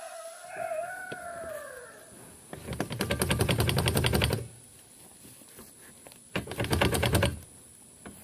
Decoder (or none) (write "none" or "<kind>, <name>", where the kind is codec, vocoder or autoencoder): none